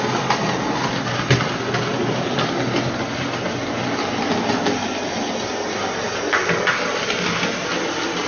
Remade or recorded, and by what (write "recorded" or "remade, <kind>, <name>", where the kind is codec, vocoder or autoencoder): recorded